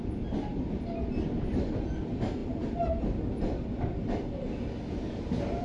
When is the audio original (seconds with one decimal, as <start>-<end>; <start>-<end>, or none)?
0.0-5.6